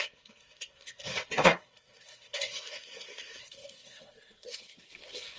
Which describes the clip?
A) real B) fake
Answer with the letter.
B